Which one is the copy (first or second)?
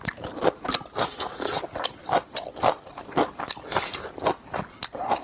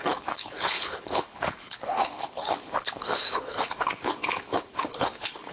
second